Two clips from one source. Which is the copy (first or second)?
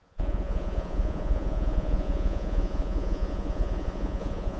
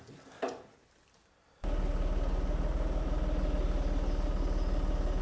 first